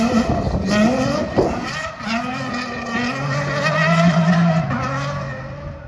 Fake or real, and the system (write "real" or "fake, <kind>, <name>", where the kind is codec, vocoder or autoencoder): real